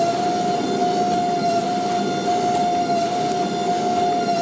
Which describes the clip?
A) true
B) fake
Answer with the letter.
A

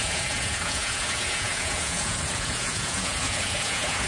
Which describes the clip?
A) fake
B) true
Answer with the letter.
A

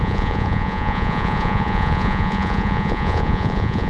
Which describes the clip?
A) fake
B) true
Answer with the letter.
A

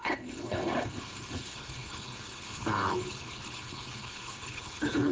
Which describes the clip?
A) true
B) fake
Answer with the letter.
B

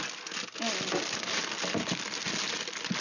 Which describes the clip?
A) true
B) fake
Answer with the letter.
A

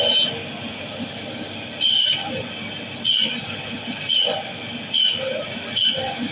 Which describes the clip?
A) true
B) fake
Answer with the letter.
A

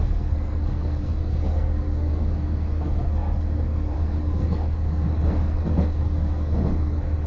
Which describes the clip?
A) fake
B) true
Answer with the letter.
A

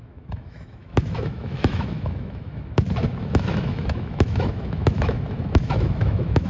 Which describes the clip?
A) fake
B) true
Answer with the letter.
A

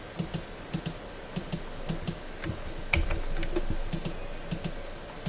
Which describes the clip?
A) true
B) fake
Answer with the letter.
A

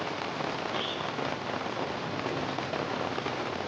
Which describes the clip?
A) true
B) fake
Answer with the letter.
A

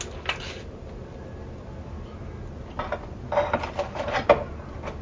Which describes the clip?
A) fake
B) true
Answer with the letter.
B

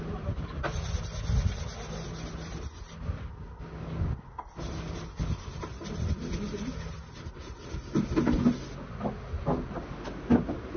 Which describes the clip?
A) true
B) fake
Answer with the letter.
A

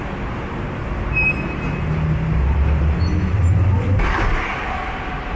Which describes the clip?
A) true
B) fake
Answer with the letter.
A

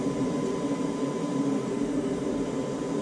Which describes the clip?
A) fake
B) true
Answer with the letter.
A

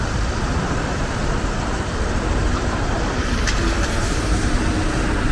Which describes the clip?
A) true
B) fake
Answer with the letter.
B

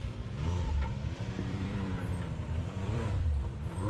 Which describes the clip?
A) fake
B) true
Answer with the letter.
A